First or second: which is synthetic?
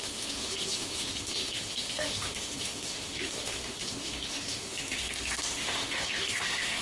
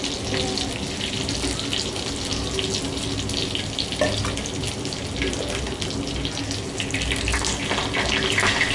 first